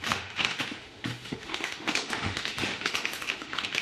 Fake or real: fake